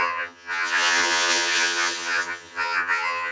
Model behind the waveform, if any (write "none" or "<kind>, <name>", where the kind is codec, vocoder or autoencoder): vocoder, HiFi-GAN